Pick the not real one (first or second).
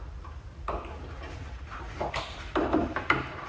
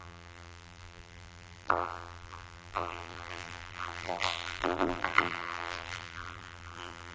second